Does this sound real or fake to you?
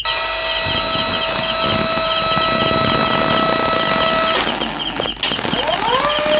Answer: real